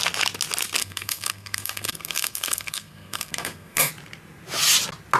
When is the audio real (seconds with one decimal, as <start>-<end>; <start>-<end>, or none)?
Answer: 0.0-0.8; 3.9-5.2